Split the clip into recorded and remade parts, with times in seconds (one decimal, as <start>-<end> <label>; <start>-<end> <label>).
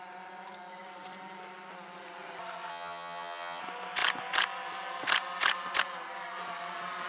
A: 0.0-2.7 recorded; 2.7-3.6 remade; 3.6-7.1 recorded